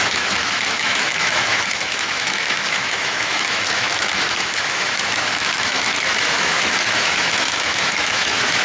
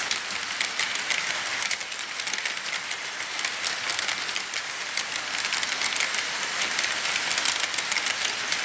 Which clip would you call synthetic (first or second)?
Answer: first